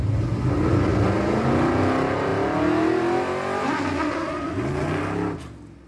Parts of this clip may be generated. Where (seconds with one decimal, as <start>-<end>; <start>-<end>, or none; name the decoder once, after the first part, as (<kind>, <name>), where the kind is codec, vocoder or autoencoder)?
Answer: none